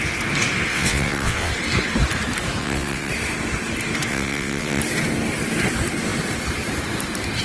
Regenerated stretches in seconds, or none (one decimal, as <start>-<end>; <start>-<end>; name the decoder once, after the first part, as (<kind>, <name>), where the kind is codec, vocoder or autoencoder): 0.7-1.5 (vocoder, WaveNeXt); 2.6-3.1; 4.1-4.8